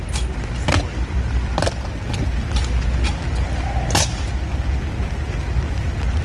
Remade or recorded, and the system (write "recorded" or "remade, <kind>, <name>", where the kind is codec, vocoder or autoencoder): recorded